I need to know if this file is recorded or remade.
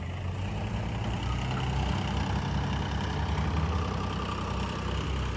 recorded